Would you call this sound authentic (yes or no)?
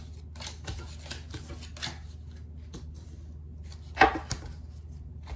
yes